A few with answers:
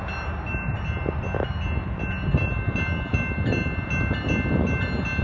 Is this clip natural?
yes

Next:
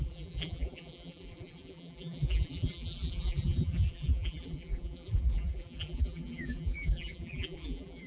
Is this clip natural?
no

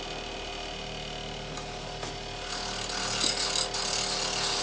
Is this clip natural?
yes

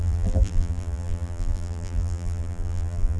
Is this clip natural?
no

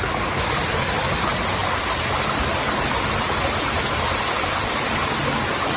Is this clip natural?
yes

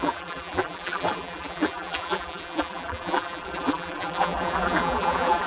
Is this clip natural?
no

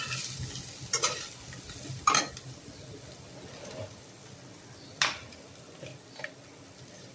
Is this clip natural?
yes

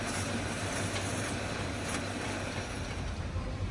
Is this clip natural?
no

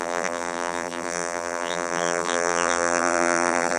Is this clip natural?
no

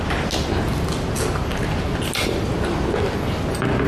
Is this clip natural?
yes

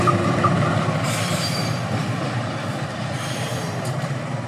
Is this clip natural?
no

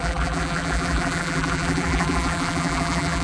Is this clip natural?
no